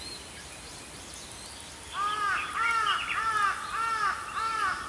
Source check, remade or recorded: recorded